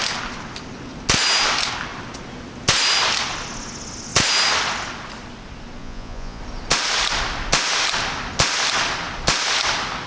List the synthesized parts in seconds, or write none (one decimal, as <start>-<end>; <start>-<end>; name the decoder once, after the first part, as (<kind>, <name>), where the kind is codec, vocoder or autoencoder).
5.8-6.4 (vocoder, Vocos)